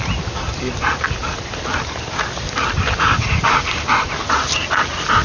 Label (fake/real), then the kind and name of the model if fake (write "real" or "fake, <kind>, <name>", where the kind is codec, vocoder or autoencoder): real